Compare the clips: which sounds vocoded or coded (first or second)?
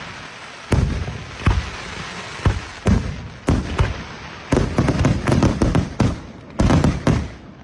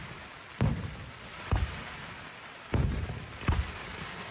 second